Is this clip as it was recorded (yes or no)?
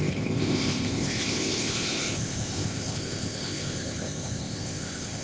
no